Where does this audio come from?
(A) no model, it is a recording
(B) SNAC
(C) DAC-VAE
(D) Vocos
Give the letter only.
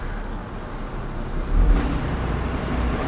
A